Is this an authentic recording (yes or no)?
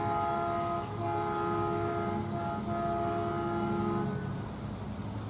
yes